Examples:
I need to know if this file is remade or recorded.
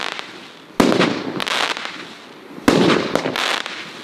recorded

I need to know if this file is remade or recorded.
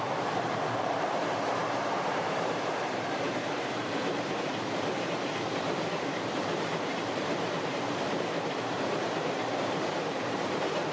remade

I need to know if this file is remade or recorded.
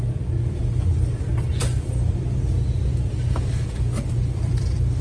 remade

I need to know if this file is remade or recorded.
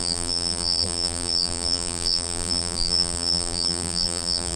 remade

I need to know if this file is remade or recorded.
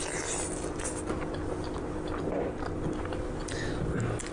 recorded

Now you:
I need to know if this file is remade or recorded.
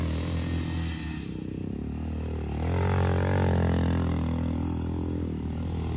recorded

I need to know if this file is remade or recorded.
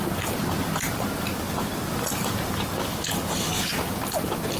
recorded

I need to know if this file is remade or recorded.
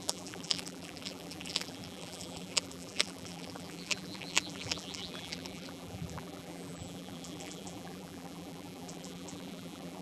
remade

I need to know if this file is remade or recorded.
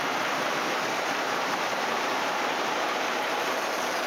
remade